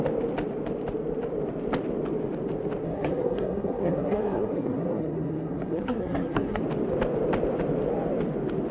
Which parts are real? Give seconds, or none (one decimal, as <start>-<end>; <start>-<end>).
0.0-2.8; 6.6-8.7